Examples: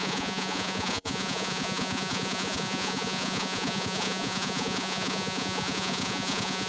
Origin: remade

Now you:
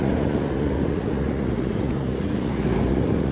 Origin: remade